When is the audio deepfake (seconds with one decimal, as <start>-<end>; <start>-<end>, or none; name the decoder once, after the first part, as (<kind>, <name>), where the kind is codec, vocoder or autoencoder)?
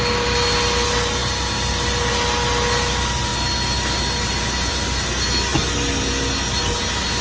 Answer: none